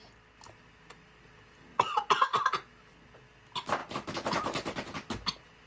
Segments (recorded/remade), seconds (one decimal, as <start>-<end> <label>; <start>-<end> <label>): 0.0-1.7 recorded; 1.7-2.4 remade; 2.4-5.7 recorded